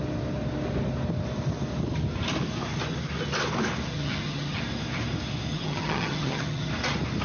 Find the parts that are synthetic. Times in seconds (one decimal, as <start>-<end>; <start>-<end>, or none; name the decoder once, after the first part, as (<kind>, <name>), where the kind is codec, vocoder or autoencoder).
3.9-4.6 (vocoder, HiFi-GAN); 5.5-6.7